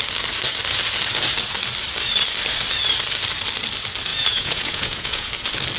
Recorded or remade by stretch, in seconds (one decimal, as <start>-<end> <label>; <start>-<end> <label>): 0.0-4.1 recorded; 4.1-5.3 remade; 5.3-5.8 recorded